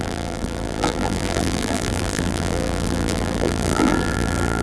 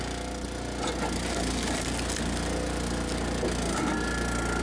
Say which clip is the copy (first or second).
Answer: first